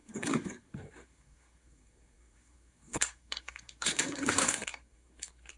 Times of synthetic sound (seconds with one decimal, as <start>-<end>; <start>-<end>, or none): 0.0-5.6